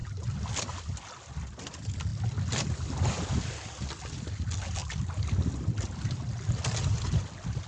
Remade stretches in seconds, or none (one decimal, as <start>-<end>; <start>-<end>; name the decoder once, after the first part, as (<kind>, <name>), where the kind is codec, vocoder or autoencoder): none